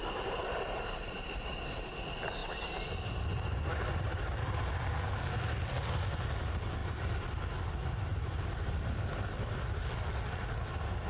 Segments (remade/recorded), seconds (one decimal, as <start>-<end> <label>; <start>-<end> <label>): 0.0-2.0 remade; 2.0-2.4 recorded; 2.4-4.6 remade; 4.6-6.8 recorded; 6.8-7.4 remade; 7.4-8.1 recorded; 8.1-9.9 remade; 9.9-11.1 recorded